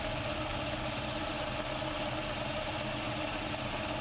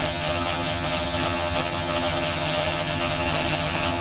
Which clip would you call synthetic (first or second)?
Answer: second